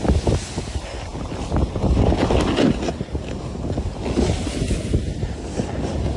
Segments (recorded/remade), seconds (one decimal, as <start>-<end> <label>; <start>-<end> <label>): 0.0-6.2 recorded